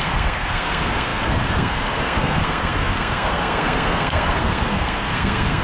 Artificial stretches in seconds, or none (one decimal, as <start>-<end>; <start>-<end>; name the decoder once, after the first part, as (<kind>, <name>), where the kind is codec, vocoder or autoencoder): 0.0-5.6 (codec, SNAC)